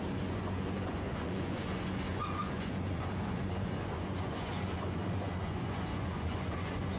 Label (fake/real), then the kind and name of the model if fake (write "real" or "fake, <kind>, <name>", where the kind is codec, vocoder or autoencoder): fake, vocoder, Vocos